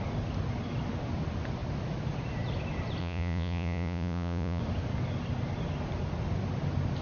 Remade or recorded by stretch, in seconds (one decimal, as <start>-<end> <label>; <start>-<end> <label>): 0.0-3.0 recorded; 3.0-4.6 remade; 4.6-7.0 recorded